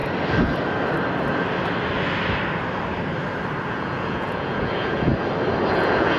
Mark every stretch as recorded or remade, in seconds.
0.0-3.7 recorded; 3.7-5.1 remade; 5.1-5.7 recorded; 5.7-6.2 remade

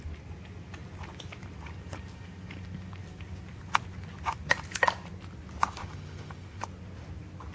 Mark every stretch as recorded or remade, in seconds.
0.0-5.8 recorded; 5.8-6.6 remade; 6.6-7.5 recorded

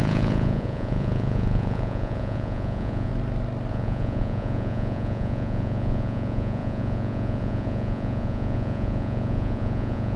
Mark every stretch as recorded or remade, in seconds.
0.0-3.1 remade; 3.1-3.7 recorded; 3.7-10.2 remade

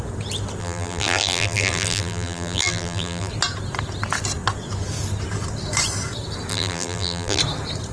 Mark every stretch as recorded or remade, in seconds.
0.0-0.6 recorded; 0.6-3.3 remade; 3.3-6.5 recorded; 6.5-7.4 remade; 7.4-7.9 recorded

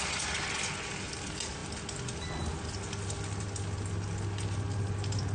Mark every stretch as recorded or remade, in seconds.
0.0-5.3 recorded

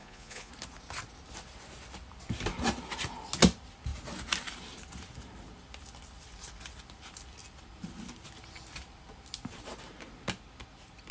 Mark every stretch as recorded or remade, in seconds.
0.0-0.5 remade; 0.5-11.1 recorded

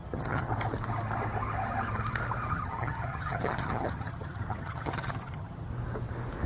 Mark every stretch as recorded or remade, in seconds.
0.0-0.5 remade; 0.5-2.5 recorded; 2.5-5.7 remade; 5.7-6.5 recorded

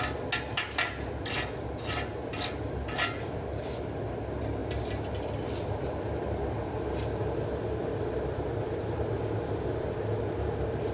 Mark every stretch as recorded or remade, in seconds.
0.0-10.9 recorded